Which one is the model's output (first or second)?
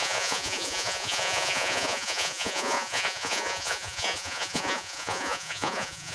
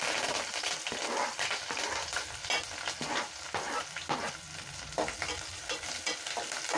first